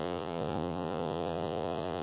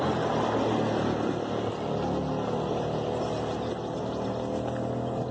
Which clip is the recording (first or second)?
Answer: second